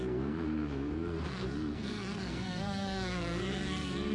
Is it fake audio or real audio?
fake